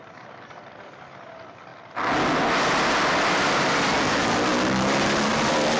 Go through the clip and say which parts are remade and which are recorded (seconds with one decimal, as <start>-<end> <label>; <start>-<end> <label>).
0.0-1.7 remade; 1.7-3.2 recorded; 3.2-3.9 remade; 3.9-5.3 recorded; 5.3-5.8 remade